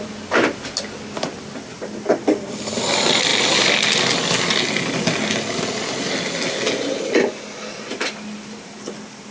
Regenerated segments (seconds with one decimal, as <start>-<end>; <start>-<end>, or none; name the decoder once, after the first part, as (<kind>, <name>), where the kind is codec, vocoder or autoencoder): none